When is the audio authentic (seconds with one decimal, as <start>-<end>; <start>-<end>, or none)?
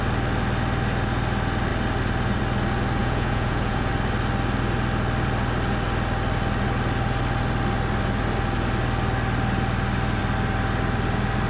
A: 0.0-3.0; 3.9-11.5